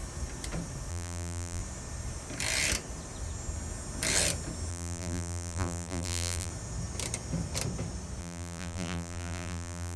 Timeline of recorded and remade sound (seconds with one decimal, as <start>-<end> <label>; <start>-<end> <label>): 0.0-0.9 recorded; 0.9-1.6 remade; 1.6-4.7 recorded; 4.7-6.5 remade; 6.5-8.2 recorded; 8.2-10.0 remade